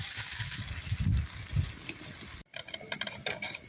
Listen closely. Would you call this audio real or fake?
real